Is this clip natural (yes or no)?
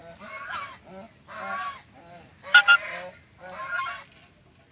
yes